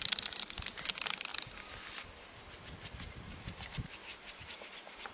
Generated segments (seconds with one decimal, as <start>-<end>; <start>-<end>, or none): none